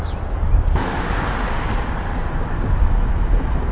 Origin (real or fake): real